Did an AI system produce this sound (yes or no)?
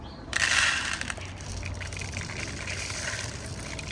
no